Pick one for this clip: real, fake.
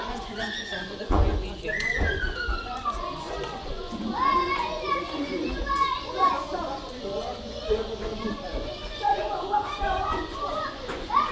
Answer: fake